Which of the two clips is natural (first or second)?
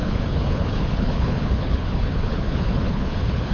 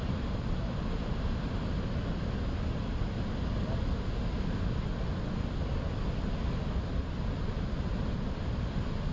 second